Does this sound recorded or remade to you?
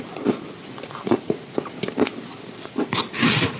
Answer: recorded